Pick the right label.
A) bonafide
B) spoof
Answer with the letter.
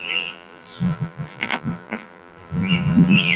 B